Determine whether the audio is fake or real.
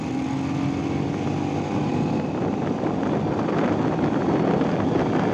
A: real